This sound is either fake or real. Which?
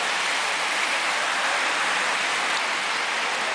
real